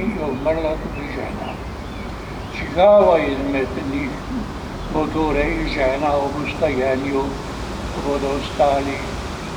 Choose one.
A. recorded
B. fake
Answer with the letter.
A